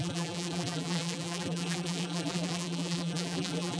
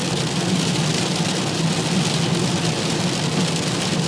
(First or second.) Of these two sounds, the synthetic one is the first